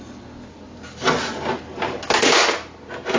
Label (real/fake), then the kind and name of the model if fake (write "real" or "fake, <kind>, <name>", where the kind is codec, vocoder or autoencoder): real